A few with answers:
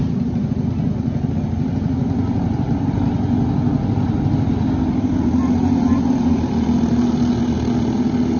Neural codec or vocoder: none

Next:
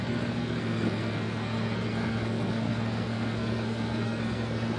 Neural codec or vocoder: codec, SNAC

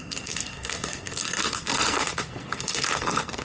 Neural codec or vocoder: codec, SNAC